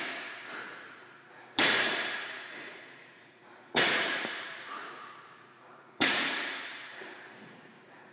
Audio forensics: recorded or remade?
remade